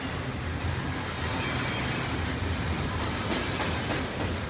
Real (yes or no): yes